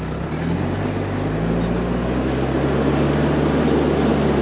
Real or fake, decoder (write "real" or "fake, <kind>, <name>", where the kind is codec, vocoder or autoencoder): real